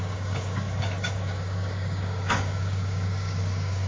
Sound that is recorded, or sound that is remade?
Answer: remade